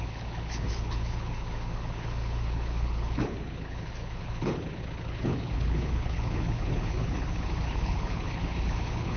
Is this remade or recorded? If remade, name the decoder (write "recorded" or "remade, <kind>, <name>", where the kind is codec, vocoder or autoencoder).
remade, codec, HILCodec